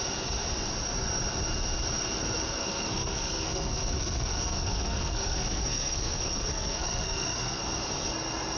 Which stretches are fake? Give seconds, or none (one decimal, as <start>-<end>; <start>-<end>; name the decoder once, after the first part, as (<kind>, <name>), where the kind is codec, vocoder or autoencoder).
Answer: 2.6-7.6 (codec, SNAC)